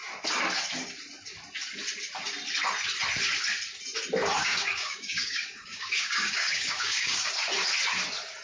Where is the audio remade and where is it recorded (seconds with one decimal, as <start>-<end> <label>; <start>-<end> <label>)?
0.0-4.4 recorded; 4.4-7.3 remade; 7.3-8.4 recorded